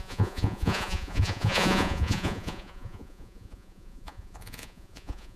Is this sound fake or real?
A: fake